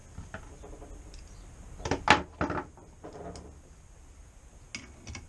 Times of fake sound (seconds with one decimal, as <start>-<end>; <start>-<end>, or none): none